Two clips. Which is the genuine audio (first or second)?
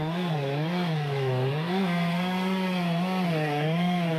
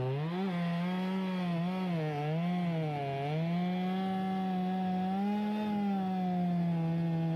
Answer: second